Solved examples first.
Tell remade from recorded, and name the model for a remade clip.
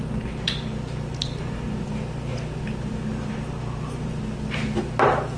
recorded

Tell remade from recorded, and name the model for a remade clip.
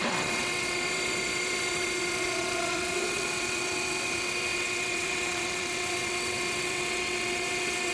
remade, vocoder, WaveNeXt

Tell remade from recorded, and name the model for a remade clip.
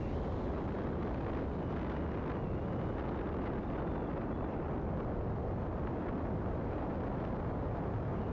recorded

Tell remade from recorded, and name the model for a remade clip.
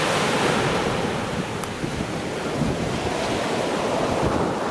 recorded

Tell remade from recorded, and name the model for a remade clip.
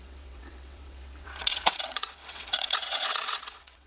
remade, vocoder, WaveNeXt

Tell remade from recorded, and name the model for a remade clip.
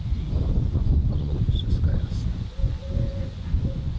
remade, vocoder, Vocos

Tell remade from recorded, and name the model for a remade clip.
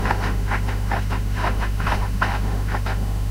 remade, autoencoder, DAC-VAE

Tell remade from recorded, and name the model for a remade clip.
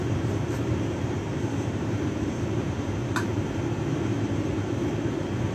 remade, vocoder, BigVGAN v2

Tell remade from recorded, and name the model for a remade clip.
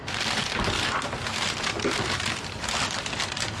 recorded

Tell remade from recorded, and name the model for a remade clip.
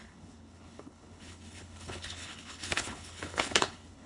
remade, codec, HILCodec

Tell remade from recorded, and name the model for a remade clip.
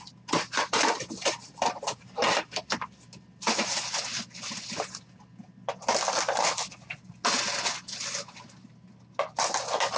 recorded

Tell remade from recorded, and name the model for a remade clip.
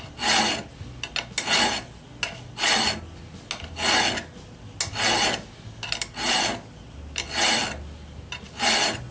recorded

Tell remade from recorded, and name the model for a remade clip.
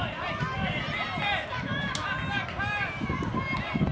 recorded